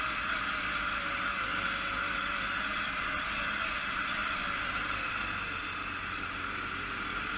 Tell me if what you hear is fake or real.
real